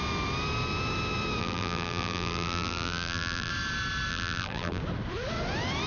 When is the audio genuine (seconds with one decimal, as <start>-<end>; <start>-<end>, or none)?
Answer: 0.0-1.4; 3.5-4.1; 4.8-5.9